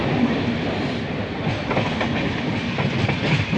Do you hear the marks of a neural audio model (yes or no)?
yes